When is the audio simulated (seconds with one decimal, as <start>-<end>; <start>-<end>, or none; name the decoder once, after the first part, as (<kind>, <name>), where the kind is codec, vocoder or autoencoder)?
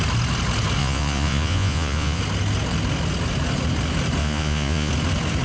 0.8-2.2 (vocoder, Vocos); 4.2-4.9